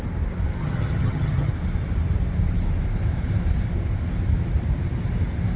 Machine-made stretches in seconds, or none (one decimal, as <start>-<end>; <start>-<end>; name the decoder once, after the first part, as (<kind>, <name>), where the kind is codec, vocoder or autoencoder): 0.6-1.5 (vocoder, HiFi-GAN)